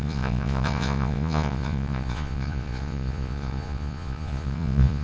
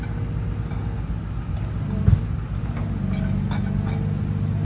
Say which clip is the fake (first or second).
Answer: first